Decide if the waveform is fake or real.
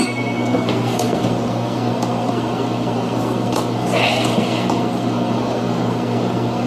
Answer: fake